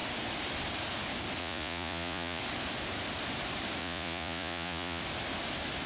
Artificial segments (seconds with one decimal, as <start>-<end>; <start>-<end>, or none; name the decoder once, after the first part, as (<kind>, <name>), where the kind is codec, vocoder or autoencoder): 1.4-2.4 (vocoder, Vocos); 3.8-5.0